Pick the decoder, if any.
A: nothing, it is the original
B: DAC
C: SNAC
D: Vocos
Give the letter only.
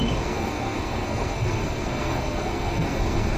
C